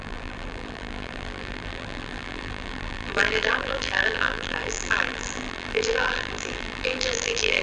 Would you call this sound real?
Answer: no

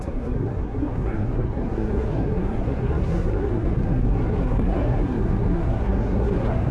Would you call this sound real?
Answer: no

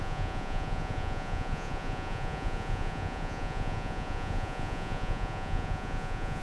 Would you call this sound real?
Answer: no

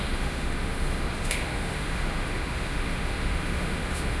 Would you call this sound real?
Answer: no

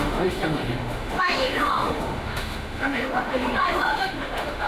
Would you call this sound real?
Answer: no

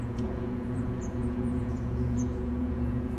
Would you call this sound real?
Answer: no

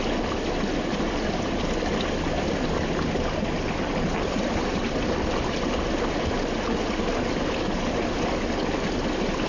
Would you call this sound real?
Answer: yes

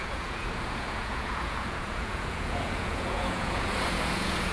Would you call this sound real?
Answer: no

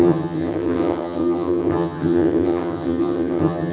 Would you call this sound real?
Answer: no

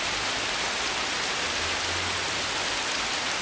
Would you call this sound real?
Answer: yes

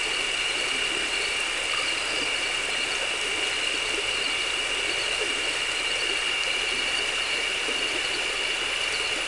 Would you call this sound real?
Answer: yes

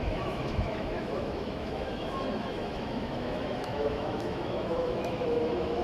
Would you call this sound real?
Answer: no